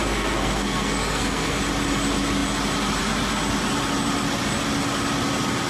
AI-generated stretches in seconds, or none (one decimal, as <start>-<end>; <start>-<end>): 0.0-1.6